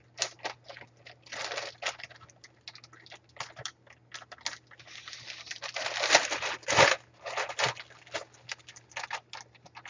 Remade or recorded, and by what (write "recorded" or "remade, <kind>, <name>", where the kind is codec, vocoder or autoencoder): recorded